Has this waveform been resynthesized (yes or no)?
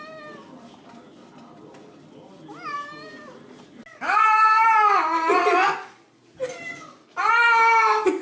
no